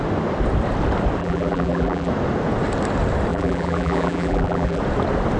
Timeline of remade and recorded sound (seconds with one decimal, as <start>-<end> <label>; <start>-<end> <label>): 0.0-1.2 recorded; 1.2-2.1 remade; 2.1-3.3 recorded; 3.3-4.8 remade; 4.8-5.4 recorded